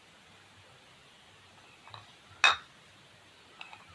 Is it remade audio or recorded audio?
recorded